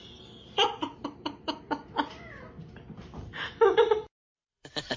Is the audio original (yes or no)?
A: no